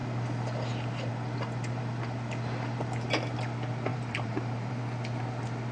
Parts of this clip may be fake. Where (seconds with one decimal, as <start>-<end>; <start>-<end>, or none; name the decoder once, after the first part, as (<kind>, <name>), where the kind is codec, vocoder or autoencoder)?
3.9-4.7 (vocoder, BigVGAN v2)

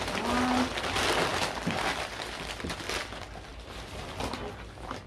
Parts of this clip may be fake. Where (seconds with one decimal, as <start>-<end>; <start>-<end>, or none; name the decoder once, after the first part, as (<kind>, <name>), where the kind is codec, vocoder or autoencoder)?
1.3-2.2 (vocoder, BigVGAN v2); 3.5-4.3